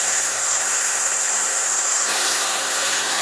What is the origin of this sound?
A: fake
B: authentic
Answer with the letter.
A